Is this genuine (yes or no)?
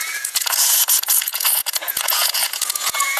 no